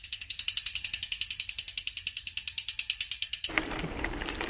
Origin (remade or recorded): recorded